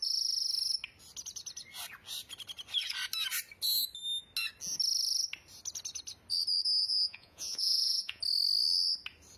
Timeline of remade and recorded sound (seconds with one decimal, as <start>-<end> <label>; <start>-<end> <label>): 0.0-6.8 recorded; 6.8-8.2 remade; 8.2-9.4 recorded